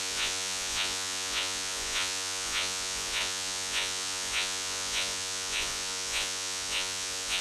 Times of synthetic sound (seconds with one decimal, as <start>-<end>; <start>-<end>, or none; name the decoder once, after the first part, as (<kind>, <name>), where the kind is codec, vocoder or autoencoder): 0.0-7.4 (vocoder, Vocos)